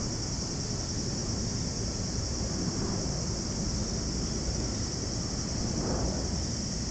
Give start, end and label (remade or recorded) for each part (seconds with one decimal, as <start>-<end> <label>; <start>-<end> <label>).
0.0-6.9 recorded